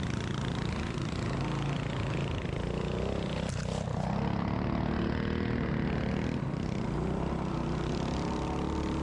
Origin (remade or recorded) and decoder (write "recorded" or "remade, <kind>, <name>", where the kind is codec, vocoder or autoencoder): recorded